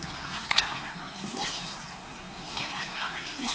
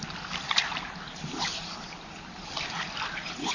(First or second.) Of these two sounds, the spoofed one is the first